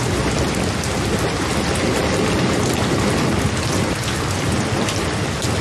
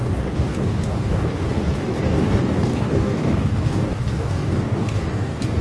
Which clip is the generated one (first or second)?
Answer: second